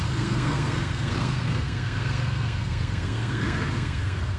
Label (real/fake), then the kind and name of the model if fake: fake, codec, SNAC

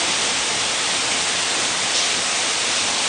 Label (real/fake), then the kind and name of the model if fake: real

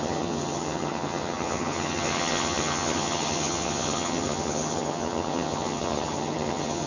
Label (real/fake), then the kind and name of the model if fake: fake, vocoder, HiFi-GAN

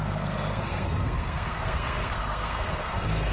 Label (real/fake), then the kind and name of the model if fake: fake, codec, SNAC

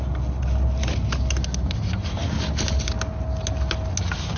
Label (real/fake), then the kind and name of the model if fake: real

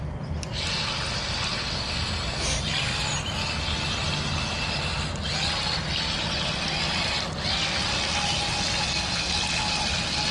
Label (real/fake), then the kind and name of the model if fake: real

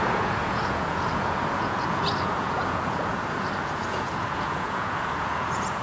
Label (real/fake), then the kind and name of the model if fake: fake, vocoder, Vocos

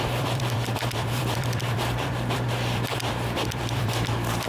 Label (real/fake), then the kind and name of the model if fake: fake, vocoder, BigVGAN v2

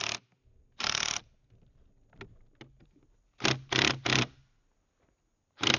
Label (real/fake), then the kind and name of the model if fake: real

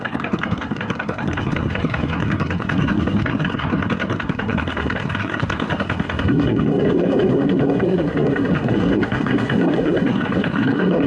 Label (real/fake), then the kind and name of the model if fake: fake, codec, SNAC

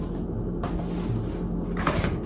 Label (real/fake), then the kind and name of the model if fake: real